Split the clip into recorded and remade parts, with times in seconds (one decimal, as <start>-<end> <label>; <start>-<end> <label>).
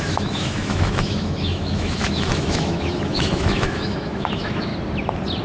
0.0-4.7 remade; 4.7-5.4 recorded